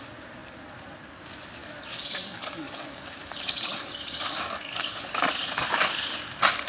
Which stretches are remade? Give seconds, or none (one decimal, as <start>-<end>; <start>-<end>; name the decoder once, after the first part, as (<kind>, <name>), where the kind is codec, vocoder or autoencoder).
1.6-5.2 (codec, DAC)